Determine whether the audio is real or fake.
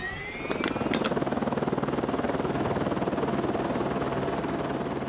real